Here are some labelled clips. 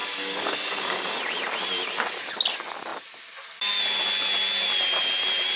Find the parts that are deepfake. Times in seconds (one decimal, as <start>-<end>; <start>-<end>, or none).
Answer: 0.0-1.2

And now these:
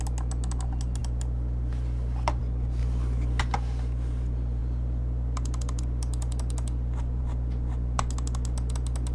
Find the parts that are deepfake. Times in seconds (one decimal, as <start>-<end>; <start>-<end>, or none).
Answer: 1.0-2.4; 2.8-3.4; 4.6-7.2

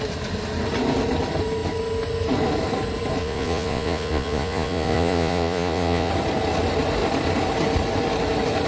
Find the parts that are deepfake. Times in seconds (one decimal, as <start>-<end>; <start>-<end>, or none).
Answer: 3.2-6.1

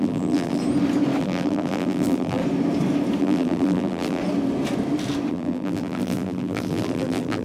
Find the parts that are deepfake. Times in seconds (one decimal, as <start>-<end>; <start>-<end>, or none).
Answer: 0.0-0.6; 1.2-2.4; 3.2-4.2; 5.3-7.4